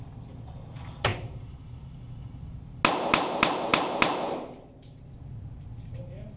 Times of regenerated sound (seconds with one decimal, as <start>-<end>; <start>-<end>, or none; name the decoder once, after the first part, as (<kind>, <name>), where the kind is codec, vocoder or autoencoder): none